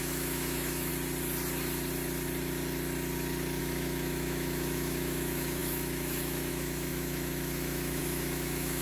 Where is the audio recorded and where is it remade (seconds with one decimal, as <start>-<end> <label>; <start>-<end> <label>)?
0.0-0.9 remade; 0.9-3.6 recorded; 3.6-8.8 remade